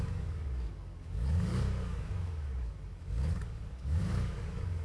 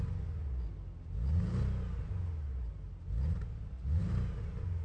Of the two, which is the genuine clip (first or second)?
second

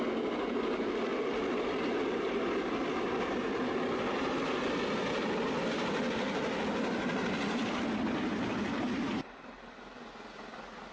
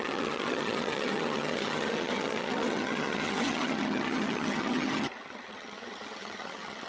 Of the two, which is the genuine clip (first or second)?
first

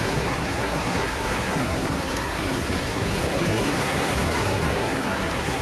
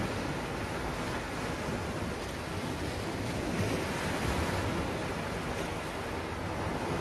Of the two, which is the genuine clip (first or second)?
second